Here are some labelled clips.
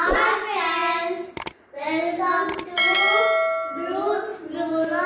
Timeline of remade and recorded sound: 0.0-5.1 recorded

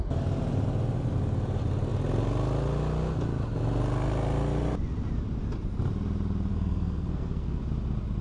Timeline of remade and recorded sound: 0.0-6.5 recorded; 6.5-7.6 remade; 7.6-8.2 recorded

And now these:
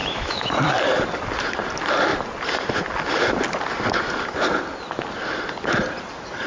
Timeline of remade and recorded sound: 0.0-0.5 remade; 0.5-6.5 recorded

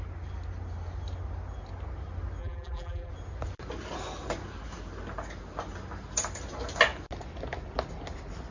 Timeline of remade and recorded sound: 0.0-2.4 recorded; 2.4-3.1 remade; 3.1-8.5 recorded

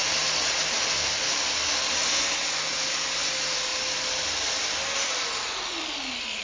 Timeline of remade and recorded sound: 0.0-3.7 recorded; 3.7-5.9 remade; 5.9-6.4 recorded

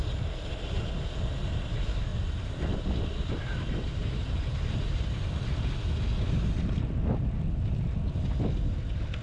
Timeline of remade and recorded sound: 0.0-3.9 recorded; 3.9-5.4 remade; 5.4-9.2 recorded

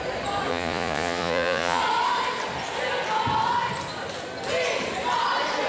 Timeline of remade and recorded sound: 0.0-0.5 recorded; 0.5-1.8 remade; 1.8-5.7 recorded